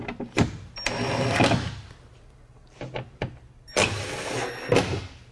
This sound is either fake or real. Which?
real